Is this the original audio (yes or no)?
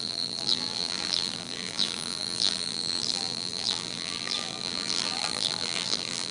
no